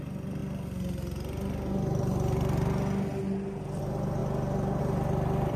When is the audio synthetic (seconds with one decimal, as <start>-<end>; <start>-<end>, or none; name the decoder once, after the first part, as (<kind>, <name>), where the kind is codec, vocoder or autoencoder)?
none

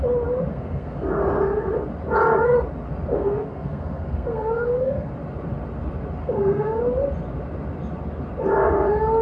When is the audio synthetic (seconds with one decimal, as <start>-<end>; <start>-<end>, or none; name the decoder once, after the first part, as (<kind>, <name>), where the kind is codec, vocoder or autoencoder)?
0.5-1.1 (codec, SNAC); 3.1-5.1; 6.2-6.8

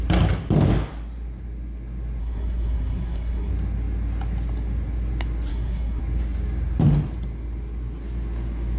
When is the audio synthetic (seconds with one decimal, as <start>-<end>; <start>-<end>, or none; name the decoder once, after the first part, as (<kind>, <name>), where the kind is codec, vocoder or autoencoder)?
2.2-3.5 (codec, SNAC); 5.5-6.0

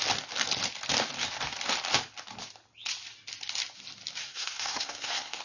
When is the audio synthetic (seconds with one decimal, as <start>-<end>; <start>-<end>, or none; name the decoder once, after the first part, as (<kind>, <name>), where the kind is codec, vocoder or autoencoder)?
4.2-5.4 (codec, SNAC)

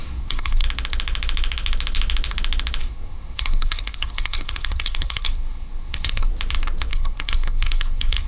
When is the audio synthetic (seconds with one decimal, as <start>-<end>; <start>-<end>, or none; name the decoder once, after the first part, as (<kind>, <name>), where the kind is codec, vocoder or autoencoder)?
0.0-0.6 (codec, SNAC); 2.8-6.3; 6.9-8.3

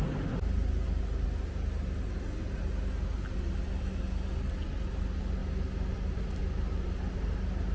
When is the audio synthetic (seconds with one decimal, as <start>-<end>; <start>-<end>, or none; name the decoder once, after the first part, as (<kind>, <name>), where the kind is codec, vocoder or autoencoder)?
none

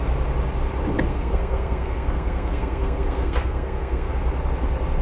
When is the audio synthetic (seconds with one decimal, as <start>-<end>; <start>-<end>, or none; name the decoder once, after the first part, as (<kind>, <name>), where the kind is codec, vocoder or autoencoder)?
1.1-4.1 (codec, SNAC)